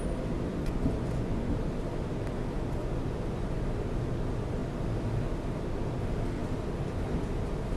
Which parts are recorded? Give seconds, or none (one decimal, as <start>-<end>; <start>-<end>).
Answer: 0.0-0.5; 1.5-2.8; 3.6-7.8